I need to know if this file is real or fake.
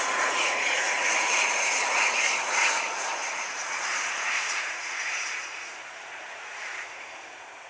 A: fake